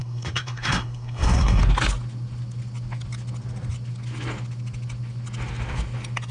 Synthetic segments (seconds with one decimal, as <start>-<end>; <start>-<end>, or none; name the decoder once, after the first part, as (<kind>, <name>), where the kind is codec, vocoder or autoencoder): 0.0-1.6 (codec, SNAC)